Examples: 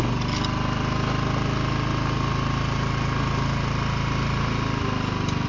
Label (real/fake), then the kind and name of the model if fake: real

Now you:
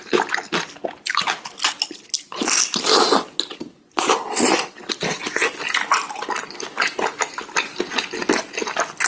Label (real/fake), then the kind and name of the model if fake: real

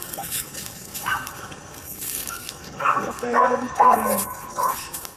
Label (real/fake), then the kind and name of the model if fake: fake, codec, SNAC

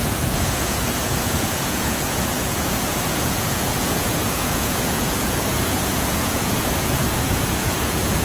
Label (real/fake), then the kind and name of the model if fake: fake, vocoder, Vocos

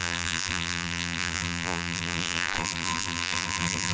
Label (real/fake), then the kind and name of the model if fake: fake, vocoder, BigVGAN v2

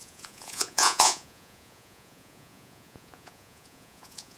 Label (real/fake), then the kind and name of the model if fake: fake, vocoder, Vocos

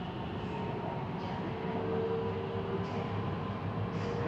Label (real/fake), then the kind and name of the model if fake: real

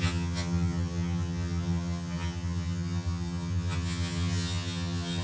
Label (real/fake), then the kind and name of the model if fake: fake, vocoder, HiFi-GAN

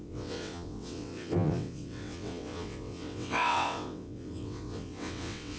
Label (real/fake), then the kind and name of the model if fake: fake, vocoder, WaveNeXt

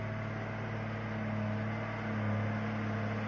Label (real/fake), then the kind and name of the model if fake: real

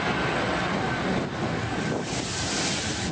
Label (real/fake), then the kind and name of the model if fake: real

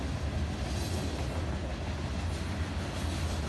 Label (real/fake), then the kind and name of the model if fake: real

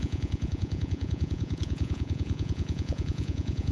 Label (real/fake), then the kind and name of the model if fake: fake, vocoder, Vocos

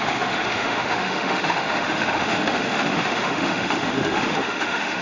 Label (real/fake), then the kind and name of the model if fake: fake, autoencoder, DAC-VAE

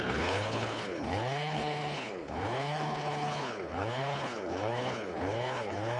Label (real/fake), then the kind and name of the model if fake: fake, codec, HILCodec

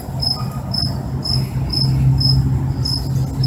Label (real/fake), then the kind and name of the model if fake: real